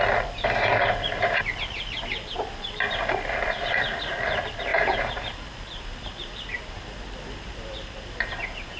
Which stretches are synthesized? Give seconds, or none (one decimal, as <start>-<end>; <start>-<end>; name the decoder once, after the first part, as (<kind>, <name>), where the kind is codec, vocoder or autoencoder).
4.7-8.8 (vocoder, BigVGAN v2)